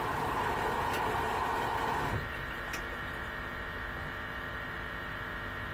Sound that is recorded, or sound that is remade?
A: remade